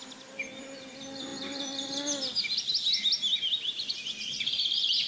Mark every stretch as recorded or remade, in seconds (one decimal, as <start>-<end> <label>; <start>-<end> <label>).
0.0-5.1 recorded